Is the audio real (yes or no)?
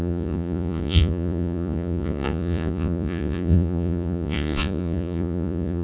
no